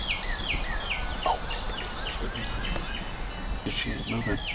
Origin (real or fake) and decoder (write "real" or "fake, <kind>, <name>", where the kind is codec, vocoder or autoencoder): real